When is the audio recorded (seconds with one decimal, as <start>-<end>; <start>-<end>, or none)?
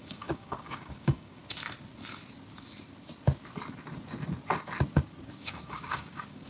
1.4-5.3